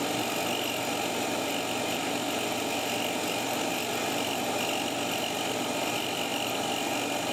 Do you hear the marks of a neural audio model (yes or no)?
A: no